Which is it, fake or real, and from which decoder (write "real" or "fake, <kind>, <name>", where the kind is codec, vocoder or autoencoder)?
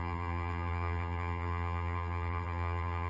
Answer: fake, vocoder, BigVGAN v2